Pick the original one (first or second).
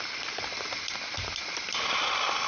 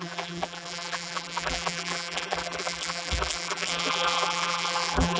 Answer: first